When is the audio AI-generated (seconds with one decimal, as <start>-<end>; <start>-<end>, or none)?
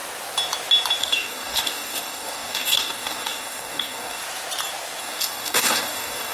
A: 1.0-4.2; 5.0-6.3